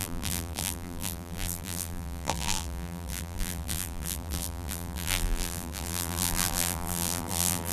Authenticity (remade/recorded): remade